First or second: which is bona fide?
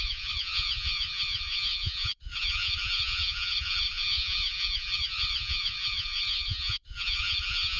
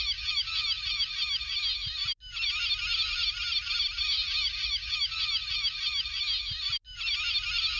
second